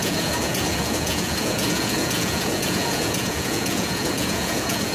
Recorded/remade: remade